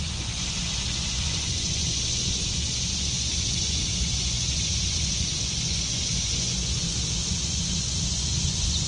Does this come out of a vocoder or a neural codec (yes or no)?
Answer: yes